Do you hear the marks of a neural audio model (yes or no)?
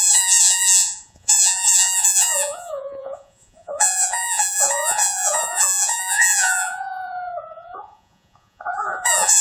yes